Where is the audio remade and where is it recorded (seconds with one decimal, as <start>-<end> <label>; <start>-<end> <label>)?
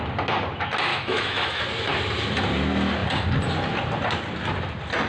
0.0-0.9 recorded; 0.9-1.6 remade; 1.6-5.1 recorded